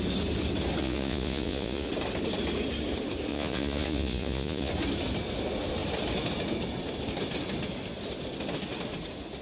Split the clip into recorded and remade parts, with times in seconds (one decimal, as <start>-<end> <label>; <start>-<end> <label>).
0.0-0.8 recorded; 0.8-1.9 remade; 1.9-3.3 recorded; 3.3-4.7 remade; 4.7-9.4 recorded